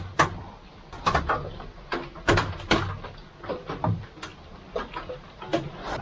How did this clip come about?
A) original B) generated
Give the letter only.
A